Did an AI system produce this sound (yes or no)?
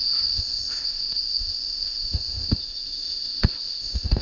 yes